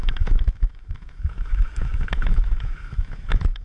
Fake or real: fake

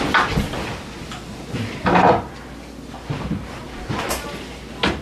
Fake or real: real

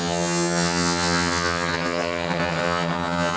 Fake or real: fake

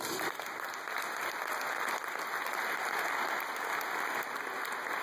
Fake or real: real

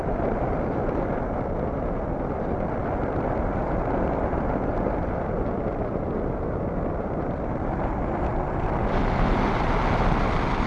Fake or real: real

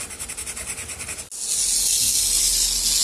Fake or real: real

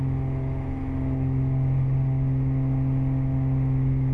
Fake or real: real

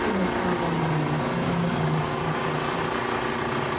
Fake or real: real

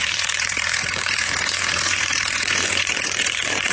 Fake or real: fake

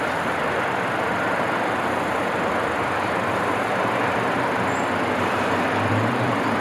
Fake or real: fake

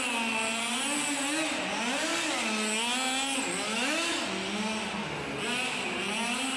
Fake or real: real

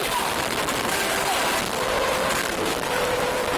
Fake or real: real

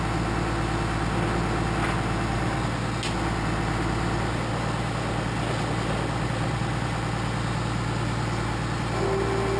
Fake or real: real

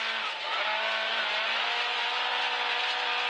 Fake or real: real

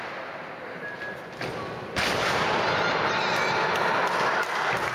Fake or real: real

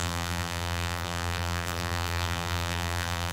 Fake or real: fake